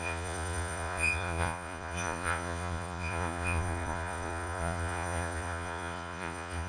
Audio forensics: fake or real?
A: fake